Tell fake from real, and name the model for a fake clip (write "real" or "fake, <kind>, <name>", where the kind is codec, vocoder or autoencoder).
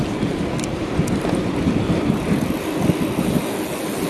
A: real